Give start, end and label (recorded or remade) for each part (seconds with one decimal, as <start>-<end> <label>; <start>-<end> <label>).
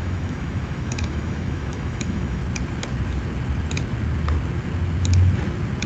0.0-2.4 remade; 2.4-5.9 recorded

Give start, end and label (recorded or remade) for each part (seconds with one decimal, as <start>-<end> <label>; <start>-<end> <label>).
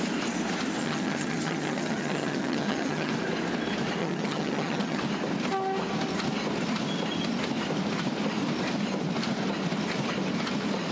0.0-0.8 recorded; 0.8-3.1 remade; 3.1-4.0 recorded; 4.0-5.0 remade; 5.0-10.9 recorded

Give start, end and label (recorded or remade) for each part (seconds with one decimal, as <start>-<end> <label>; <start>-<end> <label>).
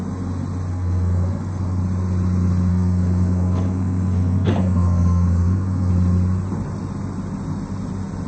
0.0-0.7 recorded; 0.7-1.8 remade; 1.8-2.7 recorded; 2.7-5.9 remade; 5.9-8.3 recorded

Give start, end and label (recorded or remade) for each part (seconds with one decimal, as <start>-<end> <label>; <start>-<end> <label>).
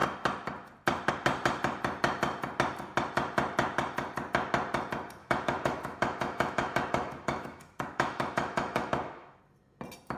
0.0-5.2 recorded; 5.2-9.4 remade; 9.4-10.2 recorded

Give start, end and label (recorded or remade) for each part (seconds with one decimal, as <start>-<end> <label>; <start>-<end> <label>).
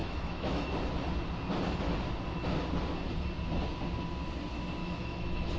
0.0-0.7 remade; 0.7-4.8 recorded; 4.8-5.6 remade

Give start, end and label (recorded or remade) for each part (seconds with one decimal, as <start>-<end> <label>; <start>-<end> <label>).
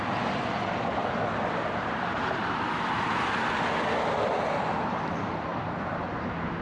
0.0-1.0 recorded; 1.0-2.0 remade; 2.0-5.5 recorded; 5.5-6.1 remade; 6.1-6.6 recorded